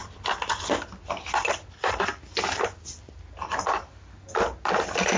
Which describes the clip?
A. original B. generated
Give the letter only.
A